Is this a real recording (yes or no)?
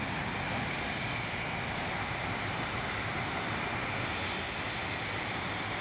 yes